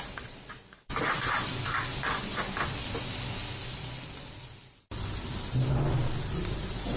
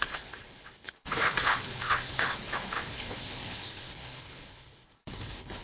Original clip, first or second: first